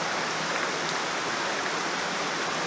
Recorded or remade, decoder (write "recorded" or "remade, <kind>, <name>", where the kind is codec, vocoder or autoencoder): recorded